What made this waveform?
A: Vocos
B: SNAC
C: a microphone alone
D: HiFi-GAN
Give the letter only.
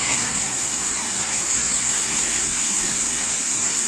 B